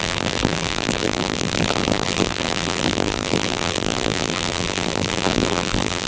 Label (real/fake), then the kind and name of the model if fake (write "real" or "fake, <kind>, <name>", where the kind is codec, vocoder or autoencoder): fake, vocoder, BigVGAN v2